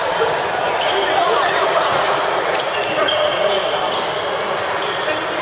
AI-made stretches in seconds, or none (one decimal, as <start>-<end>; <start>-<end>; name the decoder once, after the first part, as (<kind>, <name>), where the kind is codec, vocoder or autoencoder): 0.6-3.8 (vocoder, Vocos)